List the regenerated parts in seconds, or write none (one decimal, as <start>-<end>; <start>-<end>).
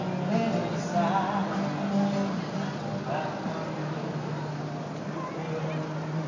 3.8-4.6